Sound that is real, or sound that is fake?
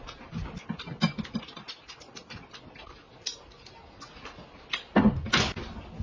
real